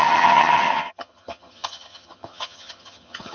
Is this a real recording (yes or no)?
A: no